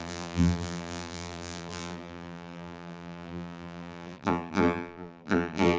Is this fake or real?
fake